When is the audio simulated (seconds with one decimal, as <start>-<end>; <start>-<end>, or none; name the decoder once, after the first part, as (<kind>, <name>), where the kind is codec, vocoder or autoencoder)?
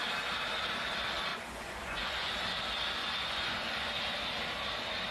1.3-2.3 (vocoder, Vocos); 3.0-3.9